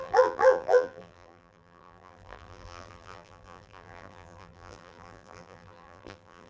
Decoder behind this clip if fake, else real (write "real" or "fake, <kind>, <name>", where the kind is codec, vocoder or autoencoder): fake, vocoder, BigVGAN v2